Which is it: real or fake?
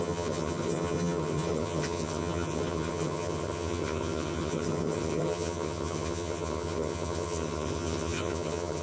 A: fake